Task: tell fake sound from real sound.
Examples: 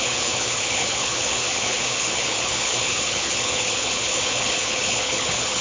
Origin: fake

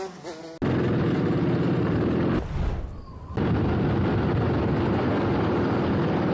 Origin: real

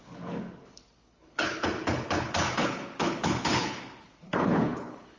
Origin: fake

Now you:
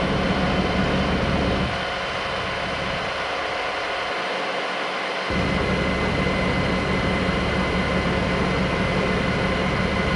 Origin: real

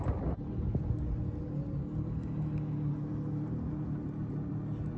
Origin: real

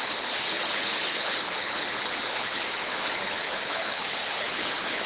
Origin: fake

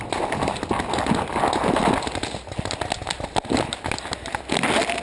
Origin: real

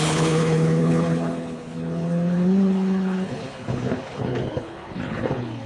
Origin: fake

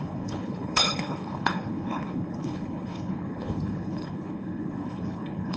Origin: fake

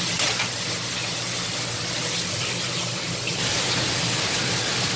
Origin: real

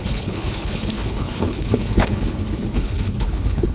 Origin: fake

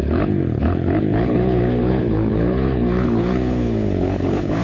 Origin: fake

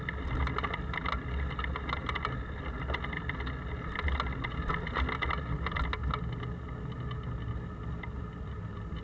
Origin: real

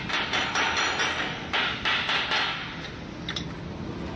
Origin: real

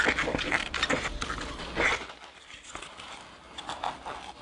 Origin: real